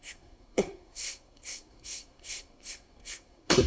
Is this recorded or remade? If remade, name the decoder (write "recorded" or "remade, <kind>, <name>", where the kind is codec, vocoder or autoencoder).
remade, codec, SNAC